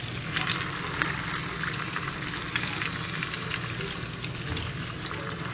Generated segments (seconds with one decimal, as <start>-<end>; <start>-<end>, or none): none